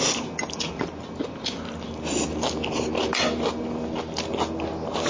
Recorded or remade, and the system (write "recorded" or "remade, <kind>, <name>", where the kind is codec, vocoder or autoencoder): recorded